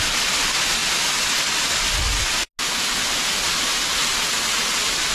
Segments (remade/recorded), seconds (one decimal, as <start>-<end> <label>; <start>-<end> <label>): 0.0-5.1 recorded